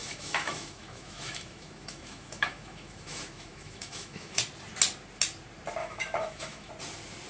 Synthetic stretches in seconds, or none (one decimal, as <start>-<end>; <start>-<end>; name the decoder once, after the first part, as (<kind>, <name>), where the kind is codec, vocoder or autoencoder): 0.0-4.4 (autoencoder, DAC-VAE); 5.8-6.7